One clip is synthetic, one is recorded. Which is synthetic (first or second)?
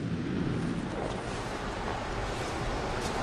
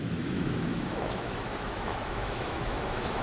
second